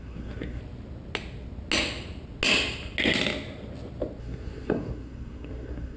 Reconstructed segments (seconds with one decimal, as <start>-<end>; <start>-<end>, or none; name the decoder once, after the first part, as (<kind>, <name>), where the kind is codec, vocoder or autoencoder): 0.0-0.6 (codec, SNAC); 4.2-6.0